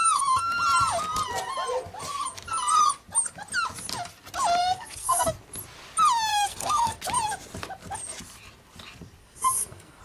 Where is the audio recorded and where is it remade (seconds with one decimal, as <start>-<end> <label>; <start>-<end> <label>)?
0.0-4.6 recorded; 4.6-5.3 remade; 5.3-6.3 recorded; 6.3-7.0 remade; 7.0-9.2 recorded; 9.2-10.0 remade